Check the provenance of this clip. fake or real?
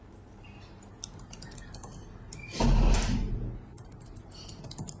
real